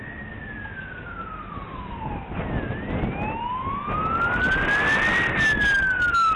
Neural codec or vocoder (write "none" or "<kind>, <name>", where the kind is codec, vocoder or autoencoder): none